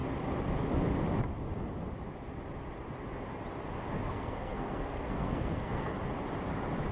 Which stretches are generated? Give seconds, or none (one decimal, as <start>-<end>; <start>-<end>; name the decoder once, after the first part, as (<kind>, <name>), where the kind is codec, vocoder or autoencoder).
4.1-5.9 (codec, SNAC)